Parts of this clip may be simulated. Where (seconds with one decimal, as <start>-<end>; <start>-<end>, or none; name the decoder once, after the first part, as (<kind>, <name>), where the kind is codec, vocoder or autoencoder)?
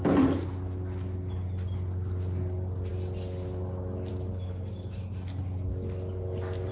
none